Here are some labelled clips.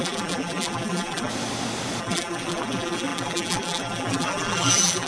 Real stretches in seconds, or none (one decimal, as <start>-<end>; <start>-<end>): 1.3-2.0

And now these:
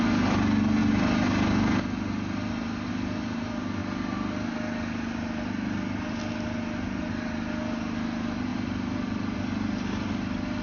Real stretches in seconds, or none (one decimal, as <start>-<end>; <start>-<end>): 0.0-8.5; 10.1-10.6

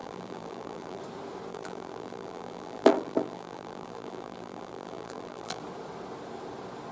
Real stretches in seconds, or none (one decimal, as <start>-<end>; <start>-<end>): 1.0-1.5; 5.6-6.9

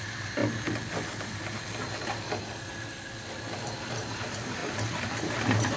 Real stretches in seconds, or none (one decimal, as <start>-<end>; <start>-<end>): 0.4-3.9

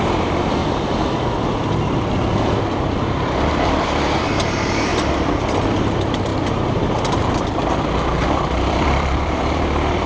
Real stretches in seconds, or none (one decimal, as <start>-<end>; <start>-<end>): 0.6-4.2; 4.9-5.8; 6.3-7.7

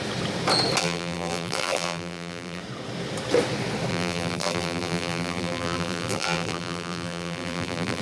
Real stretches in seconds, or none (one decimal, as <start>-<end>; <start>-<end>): 0.0-0.8; 2.6-3.9

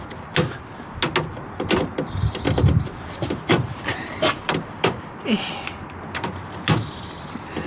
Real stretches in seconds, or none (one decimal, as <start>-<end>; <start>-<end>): 0.0-1.3; 5.5-7.7